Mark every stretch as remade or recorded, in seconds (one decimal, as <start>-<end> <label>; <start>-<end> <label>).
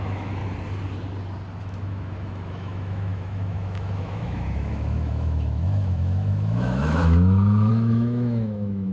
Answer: 0.0-0.4 remade; 0.4-1.6 recorded; 1.6-8.9 remade